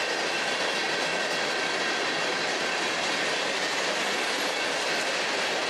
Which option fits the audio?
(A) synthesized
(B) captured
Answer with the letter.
B